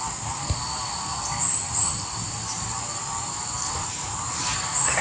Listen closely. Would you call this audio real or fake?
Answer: real